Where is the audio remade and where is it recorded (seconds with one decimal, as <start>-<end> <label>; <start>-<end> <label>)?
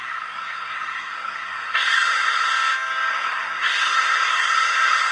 0.0-2.5 remade; 2.5-3.1 recorded; 3.1-5.1 remade